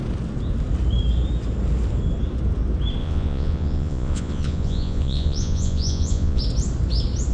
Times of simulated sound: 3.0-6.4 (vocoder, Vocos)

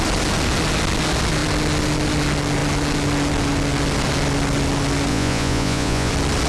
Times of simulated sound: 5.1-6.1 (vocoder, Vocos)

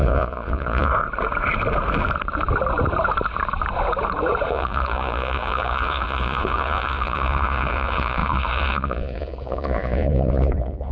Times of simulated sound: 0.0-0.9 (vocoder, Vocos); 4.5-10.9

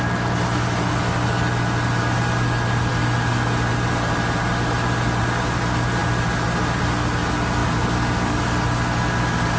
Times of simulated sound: none